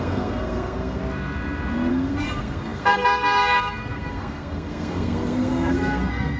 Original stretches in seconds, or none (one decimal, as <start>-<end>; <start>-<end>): 1.0-1.9